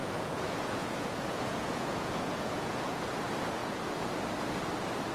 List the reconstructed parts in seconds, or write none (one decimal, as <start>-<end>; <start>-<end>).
0.0-3.0; 3.6-4.1